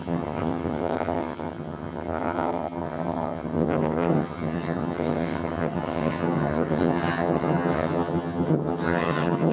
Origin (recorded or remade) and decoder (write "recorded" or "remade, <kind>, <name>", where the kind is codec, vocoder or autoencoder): remade, vocoder, HiFi-GAN